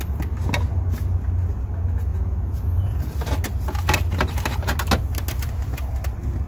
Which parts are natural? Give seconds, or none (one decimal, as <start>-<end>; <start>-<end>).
0.0-2.1; 3.0-6.5